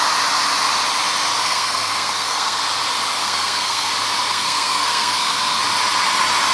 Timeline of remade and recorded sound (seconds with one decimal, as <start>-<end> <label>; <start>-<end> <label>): 0.0-1.4 recorded; 1.4-2.6 remade; 2.6-3.2 recorded; 3.2-3.9 remade; 3.9-4.3 recorded; 4.3-5.6 remade; 5.6-6.5 recorded